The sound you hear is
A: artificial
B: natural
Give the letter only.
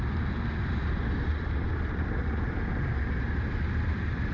B